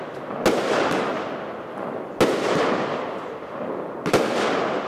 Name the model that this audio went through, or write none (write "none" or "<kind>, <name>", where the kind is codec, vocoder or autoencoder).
none